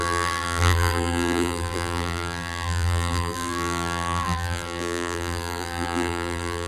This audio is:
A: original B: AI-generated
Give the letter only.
B